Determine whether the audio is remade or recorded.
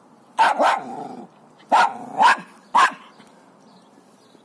recorded